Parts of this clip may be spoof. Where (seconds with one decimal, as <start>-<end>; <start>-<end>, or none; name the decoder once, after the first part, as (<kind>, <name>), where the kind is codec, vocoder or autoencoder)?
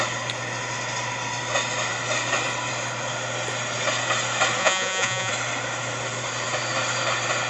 4.6-5.3 (vocoder, Vocos)